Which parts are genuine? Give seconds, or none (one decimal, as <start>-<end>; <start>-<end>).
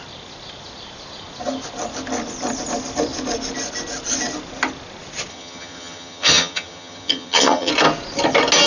0.0-5.3; 7.7-8.7